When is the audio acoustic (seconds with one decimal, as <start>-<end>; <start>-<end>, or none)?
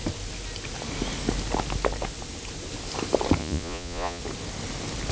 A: 0.0-3.4; 4.2-5.1